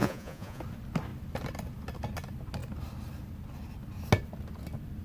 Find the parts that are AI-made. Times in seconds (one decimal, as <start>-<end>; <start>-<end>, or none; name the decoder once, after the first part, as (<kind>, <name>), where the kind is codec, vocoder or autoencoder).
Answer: 0.0-0.6 (vocoder, Vocos)